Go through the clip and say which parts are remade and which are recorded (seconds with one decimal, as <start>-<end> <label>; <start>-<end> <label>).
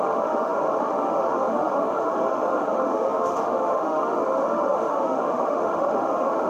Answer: 0.0-6.5 remade